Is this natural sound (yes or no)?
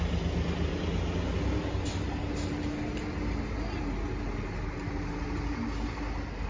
yes